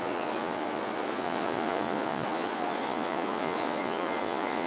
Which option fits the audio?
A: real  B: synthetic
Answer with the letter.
B